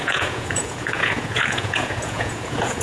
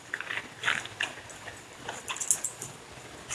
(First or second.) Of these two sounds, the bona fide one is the second